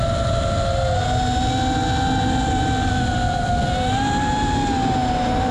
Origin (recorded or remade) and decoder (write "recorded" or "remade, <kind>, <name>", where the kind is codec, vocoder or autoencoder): recorded